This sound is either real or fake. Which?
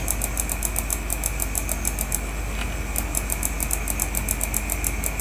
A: real